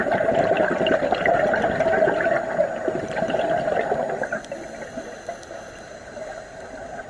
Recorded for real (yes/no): yes